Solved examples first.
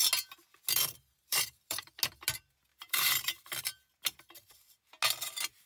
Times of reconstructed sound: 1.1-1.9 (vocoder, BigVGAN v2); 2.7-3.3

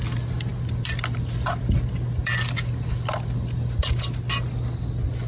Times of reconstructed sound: none